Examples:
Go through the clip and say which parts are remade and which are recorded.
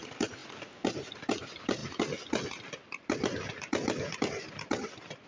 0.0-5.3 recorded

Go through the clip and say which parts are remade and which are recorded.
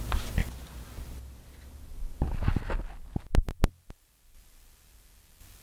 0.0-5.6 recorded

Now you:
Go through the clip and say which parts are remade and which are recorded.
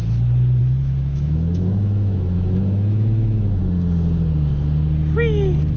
0.0-0.6 recorded; 0.6-3.6 remade; 3.6-5.8 recorded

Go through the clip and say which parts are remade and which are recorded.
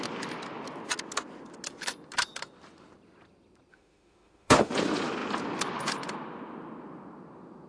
0.0-3.7 recorded; 3.7-4.7 remade; 4.7-7.7 recorded